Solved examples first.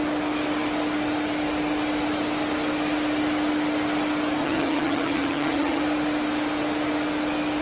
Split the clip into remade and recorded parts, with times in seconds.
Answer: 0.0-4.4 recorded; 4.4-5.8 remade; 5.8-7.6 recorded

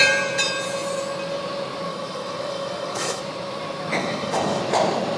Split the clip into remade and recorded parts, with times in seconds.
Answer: 0.0-1.9 recorded; 1.9-3.2 remade; 3.2-4.0 recorded; 4.0-4.6 remade; 4.6-5.2 recorded

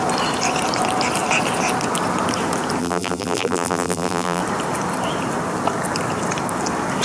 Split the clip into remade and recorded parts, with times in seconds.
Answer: 0.0-2.8 recorded; 2.8-4.4 remade; 4.4-7.0 recorded

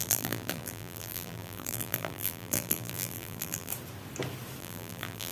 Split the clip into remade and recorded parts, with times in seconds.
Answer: 0.0-3.7 remade; 3.7-4.6 recorded; 4.6-5.3 remade